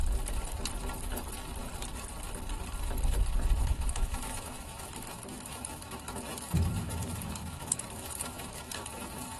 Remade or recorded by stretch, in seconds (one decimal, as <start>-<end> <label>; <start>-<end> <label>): 0.0-3.6 recorded; 3.6-9.4 remade